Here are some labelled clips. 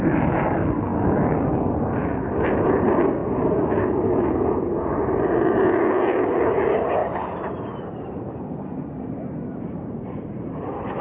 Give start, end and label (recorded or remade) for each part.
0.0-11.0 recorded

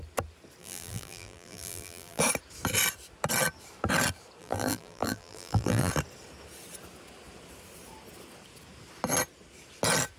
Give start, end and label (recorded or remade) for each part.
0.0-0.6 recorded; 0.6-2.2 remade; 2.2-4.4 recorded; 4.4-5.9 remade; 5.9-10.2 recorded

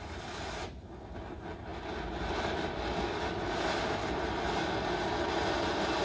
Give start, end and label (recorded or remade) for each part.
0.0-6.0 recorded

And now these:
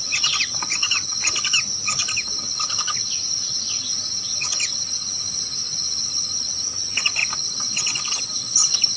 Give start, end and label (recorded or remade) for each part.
0.0-9.0 recorded

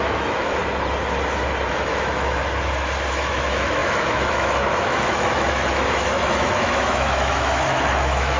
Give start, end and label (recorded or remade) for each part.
0.0-0.6 remade; 0.6-1.7 recorded; 1.7-2.4 remade; 2.4-3.1 recorded; 3.1-8.4 remade

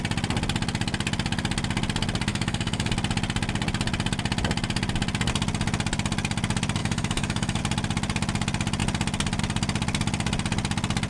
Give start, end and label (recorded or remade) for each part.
0.0-2.3 recorded; 2.3-2.9 remade; 2.9-6.8 recorded; 6.8-7.6 remade; 7.6-11.1 recorded

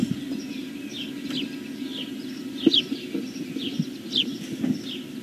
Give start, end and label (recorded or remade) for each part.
0.0-1.9 recorded; 1.9-4.6 remade; 4.6-5.2 recorded

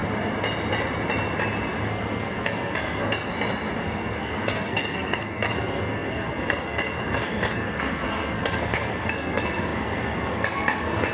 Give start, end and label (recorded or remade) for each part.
0.0-1.9 recorded; 1.9-3.3 remade; 3.3-3.8 recorded; 3.8-11.1 remade